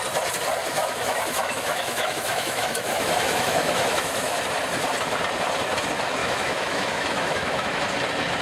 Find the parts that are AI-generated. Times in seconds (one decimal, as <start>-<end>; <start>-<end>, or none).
0.6-4.4; 6.2-7.8